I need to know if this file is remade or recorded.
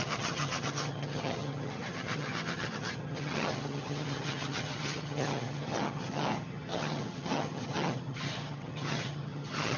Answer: remade